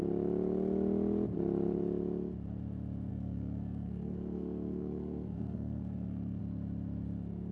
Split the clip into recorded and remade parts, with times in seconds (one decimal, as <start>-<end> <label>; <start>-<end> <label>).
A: 0.0-3.1 recorded; 3.1-6.4 remade; 6.4-7.5 recorded